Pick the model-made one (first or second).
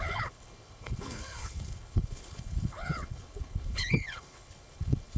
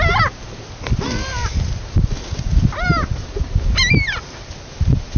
first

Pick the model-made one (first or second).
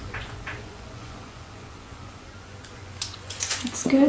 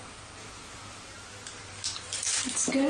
first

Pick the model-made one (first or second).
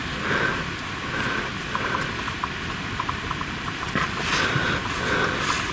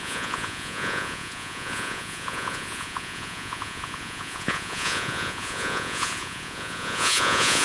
second